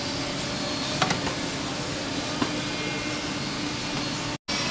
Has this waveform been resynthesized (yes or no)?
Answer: no